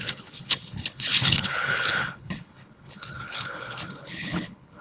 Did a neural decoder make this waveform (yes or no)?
yes